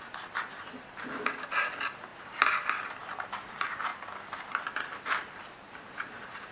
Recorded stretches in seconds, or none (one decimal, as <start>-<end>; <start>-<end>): none

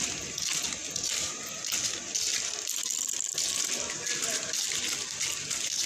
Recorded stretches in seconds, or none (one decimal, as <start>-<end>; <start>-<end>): 0.0-0.8; 1.3-5.9

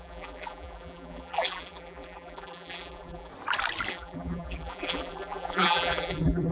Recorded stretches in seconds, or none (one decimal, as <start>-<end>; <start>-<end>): 3.3-3.9